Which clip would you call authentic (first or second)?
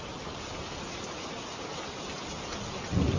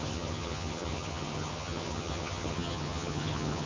first